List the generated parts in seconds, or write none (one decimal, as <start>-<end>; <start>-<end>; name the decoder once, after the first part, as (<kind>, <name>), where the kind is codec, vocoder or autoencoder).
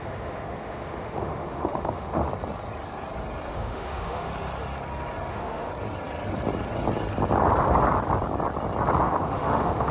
0.0-2.3 (autoencoder, DAC-VAE); 3.5-4.3; 5.3-5.7; 9.0-9.9